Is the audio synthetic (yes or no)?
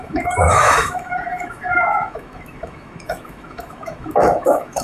yes